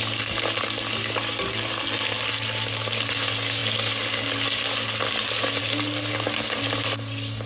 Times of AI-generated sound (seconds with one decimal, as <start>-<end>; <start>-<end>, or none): none